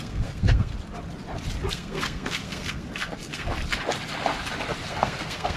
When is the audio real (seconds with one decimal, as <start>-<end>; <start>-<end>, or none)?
0.7-1.7; 3.5-4.9